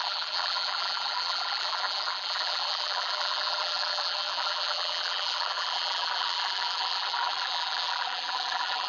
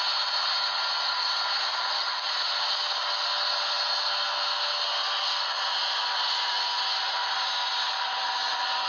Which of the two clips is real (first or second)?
second